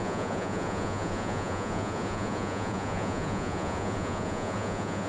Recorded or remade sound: remade